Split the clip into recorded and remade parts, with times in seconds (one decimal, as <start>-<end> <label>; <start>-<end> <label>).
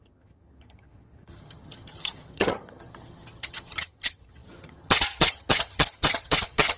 0.0-6.8 remade